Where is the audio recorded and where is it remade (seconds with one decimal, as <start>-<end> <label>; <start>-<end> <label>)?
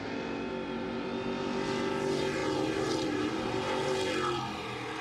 0.0-5.0 recorded